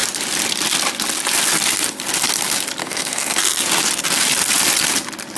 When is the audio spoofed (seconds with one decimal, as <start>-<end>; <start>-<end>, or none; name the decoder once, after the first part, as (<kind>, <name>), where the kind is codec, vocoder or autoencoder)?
2.8-3.5 (codec, SNAC)